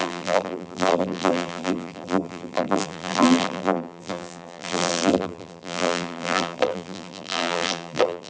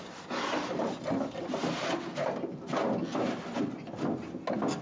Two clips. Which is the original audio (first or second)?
second